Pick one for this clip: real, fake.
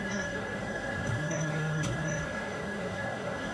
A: fake